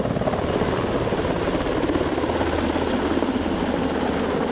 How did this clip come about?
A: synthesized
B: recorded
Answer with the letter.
B